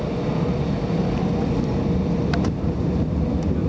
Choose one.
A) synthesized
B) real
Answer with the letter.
B